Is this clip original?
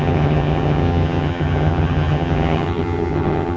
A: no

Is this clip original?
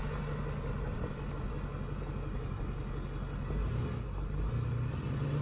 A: yes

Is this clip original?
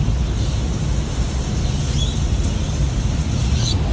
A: yes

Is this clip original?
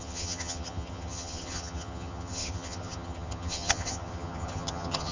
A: no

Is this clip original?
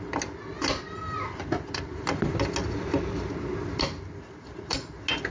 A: yes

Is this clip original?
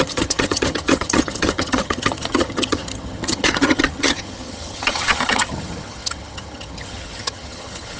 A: no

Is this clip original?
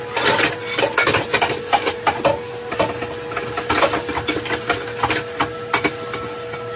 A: yes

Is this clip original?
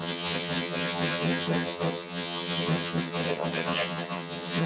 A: no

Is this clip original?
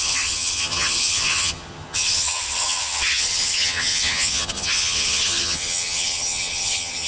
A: no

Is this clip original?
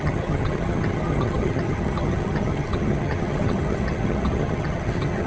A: no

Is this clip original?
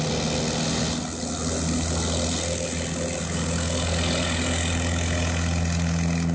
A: yes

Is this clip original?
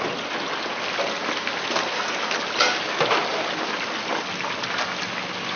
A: yes